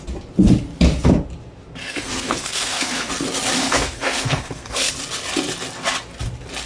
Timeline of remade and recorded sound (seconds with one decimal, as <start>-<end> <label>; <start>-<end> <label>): 0.0-1.8 recorded; 1.8-3.1 remade; 3.1-3.6 recorded; 3.6-4.9 remade; 4.9-6.7 recorded